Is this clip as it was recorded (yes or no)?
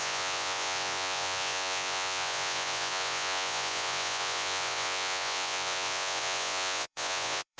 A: no